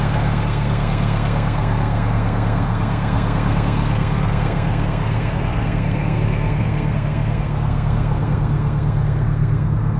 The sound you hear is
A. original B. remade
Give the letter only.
B